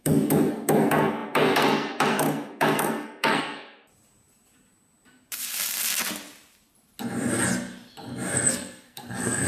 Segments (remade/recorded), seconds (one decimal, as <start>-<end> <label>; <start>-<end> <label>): 0.0-3.9 remade; 3.9-8.5 recorded; 8.5-9.5 remade